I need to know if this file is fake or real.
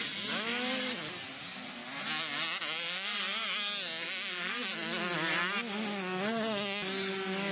real